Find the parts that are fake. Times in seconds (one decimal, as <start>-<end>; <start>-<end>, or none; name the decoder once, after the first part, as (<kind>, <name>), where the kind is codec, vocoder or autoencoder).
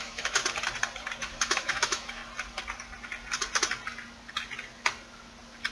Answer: 0.0-0.4 (autoencoder, DAC-VAE); 1.3-2.2